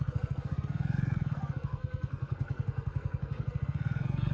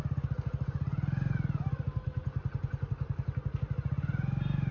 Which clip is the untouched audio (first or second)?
second